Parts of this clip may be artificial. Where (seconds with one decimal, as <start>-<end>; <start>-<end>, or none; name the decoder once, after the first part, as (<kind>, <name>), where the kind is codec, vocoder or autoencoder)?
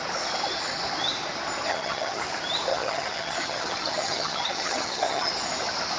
1.7-2.2 (vocoder, HiFi-GAN); 2.7-5.3